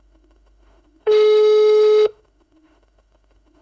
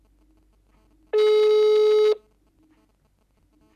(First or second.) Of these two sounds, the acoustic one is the second